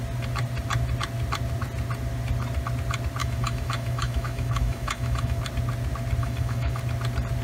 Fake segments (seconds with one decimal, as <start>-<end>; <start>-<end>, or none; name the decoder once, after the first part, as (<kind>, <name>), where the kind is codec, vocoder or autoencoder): 3.2-5.4 (autoencoder, DAC-VAE); 6.2-6.8